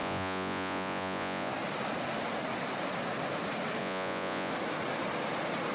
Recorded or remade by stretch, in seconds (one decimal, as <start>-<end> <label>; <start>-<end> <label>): 0.0-1.5 remade; 1.5-3.8 recorded; 3.8-4.5 remade; 4.5-5.7 recorded